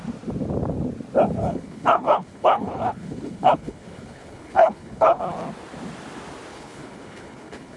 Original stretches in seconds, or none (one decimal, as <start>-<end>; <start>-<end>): 0.0-1.4; 5.2-6.5